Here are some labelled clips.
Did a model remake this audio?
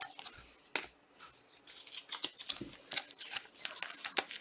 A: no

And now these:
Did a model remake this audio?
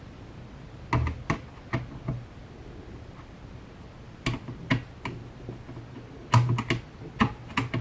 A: no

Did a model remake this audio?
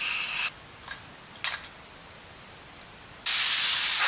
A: no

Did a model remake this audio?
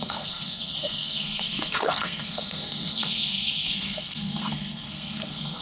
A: yes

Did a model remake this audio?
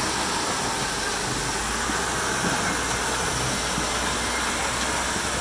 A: no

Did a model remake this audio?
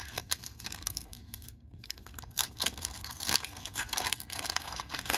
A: yes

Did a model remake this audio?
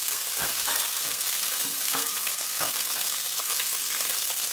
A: yes